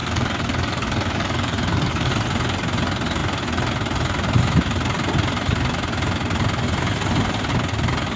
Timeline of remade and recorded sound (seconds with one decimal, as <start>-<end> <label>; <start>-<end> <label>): 0.0-2.1 remade; 2.1-8.2 recorded